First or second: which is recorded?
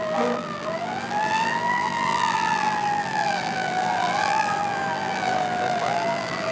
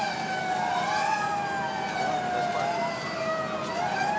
second